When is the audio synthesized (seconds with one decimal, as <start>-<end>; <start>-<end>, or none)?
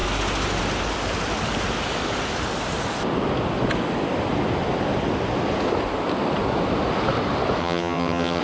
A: 7.6-8.4